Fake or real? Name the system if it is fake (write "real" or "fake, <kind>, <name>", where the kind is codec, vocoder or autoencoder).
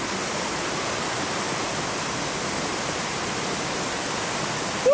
real